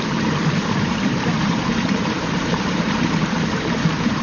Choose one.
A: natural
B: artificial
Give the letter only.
B